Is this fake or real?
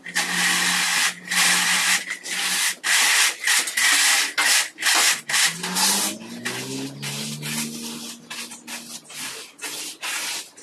real